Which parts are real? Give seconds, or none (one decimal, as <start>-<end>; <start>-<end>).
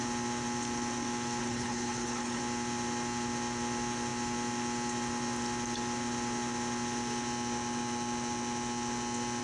0.0-1.4; 2.4-9.4